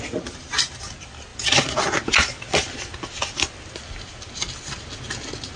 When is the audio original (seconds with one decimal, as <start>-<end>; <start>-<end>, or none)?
0.0-5.6

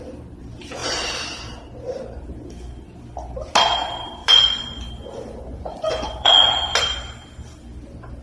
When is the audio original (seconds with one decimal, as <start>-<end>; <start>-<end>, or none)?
0.0-4.2; 4.8-5.5; 6.6-8.2

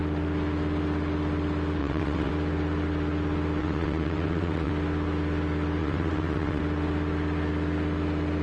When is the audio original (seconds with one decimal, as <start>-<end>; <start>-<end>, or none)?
0.0-1.8; 2.3-3.6; 4.7-5.8; 6.6-8.4